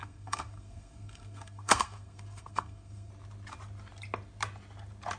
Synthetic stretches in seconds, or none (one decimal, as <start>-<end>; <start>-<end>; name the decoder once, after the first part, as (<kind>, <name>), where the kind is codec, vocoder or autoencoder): 0.0-3.1 (codec, SNAC)